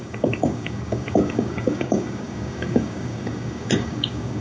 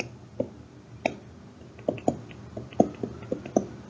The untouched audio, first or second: second